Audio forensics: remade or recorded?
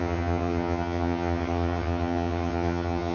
remade